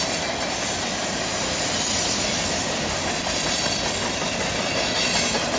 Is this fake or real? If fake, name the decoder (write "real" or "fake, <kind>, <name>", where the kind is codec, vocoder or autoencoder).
real